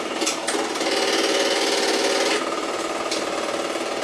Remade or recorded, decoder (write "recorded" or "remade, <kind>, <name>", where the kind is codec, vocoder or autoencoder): recorded